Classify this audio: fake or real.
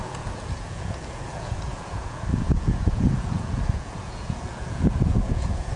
fake